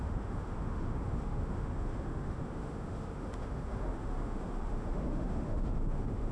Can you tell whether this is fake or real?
fake